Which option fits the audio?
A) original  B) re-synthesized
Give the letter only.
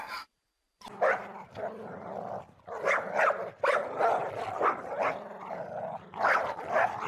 A